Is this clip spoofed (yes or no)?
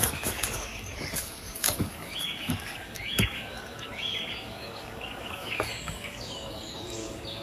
yes